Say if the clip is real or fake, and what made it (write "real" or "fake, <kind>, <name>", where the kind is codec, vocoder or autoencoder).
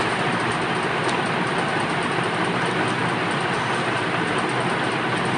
real